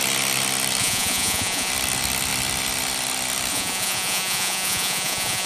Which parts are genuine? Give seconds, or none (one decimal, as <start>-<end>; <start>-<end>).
0.0-0.8; 1.7-3.5